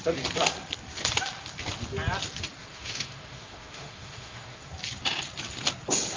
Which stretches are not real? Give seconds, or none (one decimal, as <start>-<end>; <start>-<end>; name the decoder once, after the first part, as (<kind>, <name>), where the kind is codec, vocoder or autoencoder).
2.6-4.7 (autoencoder, DAC-VAE)